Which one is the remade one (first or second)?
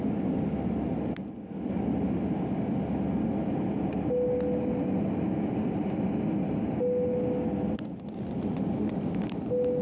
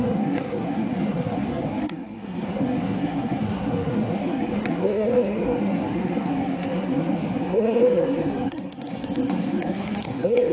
second